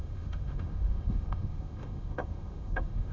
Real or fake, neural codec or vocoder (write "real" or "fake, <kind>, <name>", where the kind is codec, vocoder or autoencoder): fake, autoencoder, DAC-VAE